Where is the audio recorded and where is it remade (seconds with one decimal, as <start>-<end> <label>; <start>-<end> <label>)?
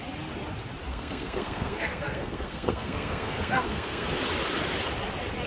0.0-0.9 recorded; 0.9-4.2 remade; 4.2-5.5 recorded